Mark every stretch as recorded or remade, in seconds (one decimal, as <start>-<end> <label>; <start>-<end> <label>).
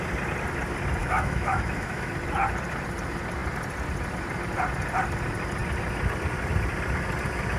0.0-1.0 recorded; 1.0-2.1 remade; 2.1-7.6 recorded